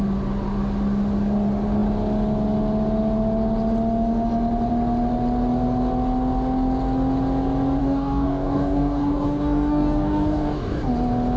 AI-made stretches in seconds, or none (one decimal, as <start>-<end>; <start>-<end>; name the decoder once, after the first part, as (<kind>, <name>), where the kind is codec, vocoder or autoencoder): 7.8-10.9 (codec, DAC)